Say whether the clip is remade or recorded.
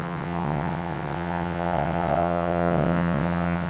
remade